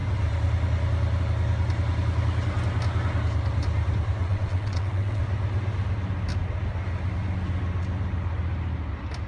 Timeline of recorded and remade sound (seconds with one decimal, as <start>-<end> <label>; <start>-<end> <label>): 0.0-4.2 recorded; 4.2-5.2 remade; 5.2-9.3 recorded